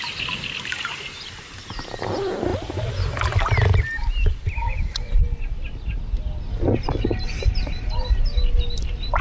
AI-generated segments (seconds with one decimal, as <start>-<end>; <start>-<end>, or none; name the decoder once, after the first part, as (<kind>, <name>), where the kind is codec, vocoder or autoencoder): 4.6-5.2 (vocoder, WaveNeXt)